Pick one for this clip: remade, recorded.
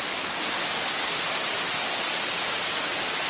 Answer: recorded